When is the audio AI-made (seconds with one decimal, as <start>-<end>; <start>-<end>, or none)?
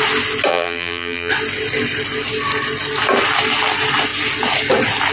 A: 0.5-1.3